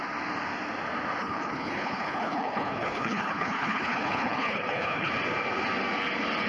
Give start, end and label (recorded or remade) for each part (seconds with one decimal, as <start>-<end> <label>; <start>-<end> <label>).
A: 0.0-1.2 recorded; 1.2-5.1 remade; 5.1-6.5 recorded